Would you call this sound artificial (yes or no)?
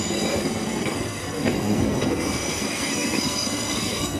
yes